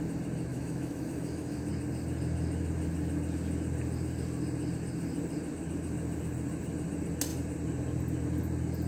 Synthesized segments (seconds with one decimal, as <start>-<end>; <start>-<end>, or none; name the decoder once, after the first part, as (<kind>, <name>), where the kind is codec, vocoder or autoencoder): 0.5-1.7 (autoencoder, DAC-VAE)